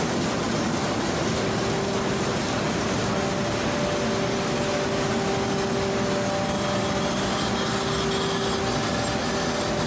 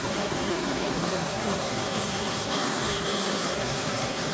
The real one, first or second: first